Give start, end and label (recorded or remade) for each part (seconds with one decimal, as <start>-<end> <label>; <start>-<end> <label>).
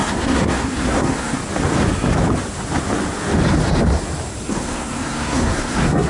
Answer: 0.0-1.4 remade; 1.4-4.5 recorded; 4.5-6.1 remade